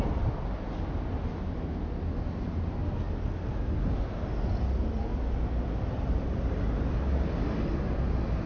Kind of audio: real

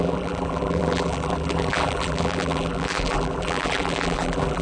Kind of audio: fake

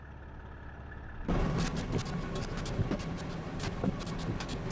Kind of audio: real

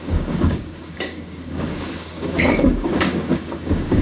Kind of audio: fake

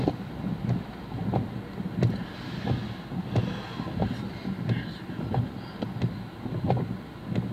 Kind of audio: real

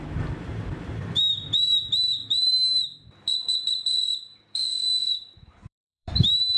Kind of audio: fake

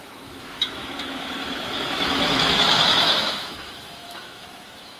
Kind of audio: fake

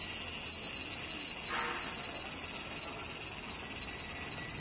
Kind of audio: real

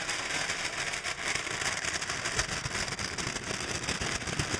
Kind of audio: real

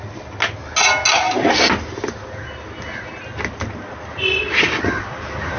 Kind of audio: real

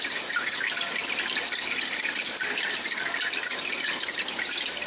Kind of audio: real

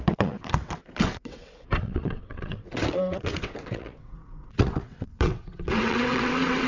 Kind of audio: fake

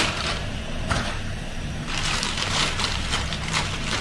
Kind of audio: fake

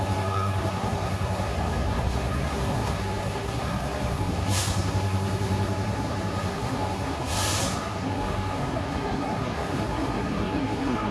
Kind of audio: fake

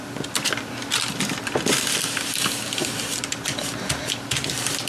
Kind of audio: fake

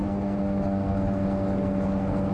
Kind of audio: fake